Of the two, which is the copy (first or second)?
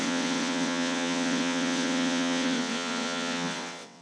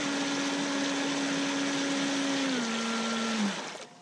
first